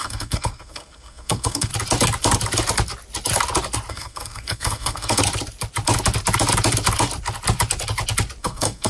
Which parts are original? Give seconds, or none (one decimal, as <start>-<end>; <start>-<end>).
1.7-3.9; 5.2-8.4